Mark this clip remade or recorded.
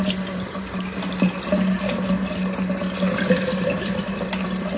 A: recorded